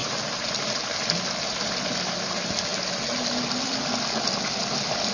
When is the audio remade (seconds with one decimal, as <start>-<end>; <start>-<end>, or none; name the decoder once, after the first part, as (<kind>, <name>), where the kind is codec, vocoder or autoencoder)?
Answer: none